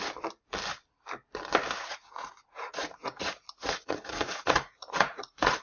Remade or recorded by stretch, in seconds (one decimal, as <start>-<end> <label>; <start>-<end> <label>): 0.0-1.8 recorded; 1.8-5.6 remade